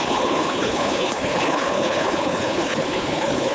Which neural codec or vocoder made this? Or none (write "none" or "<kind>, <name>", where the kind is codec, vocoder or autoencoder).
codec, HILCodec